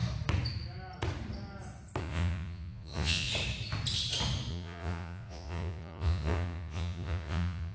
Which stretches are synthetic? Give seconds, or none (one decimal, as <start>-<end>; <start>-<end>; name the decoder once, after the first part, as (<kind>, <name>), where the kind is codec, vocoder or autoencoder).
2.0-3.3 (vocoder, Vocos); 4.5-7.7